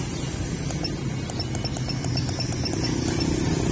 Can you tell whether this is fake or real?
real